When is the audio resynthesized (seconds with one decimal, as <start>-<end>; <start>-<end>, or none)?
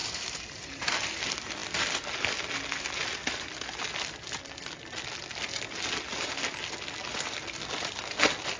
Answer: 0.0-0.9